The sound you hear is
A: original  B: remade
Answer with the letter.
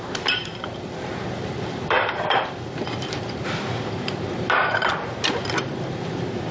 B